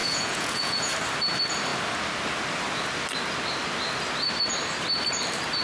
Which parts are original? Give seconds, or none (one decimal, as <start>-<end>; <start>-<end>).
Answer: 0.9-5.6